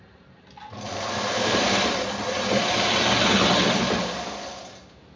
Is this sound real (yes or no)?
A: yes